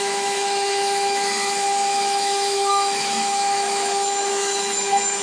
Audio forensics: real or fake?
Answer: fake